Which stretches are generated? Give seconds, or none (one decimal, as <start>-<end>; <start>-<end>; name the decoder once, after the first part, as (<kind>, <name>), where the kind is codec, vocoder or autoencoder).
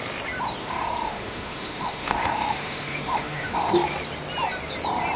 0.6-3.7 (autoencoder, DAC-VAE)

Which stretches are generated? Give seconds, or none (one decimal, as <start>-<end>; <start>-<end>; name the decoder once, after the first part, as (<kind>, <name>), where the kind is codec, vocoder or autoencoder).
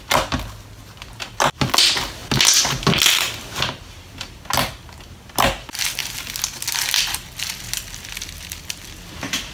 none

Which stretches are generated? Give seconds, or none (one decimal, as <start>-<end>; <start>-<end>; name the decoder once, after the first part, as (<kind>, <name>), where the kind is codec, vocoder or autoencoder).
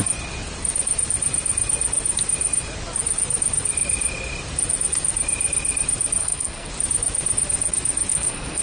6.2-6.7 (codec, SNAC); 8.1-8.6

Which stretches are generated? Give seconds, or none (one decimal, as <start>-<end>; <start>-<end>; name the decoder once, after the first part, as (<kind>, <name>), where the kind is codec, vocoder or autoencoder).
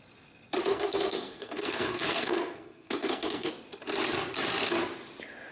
0.7-3.5 (codec, SNAC)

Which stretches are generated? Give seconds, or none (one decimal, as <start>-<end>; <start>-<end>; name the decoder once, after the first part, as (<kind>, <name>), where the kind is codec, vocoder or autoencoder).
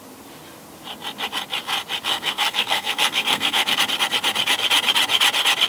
2.1-3.8 (codec, SNAC)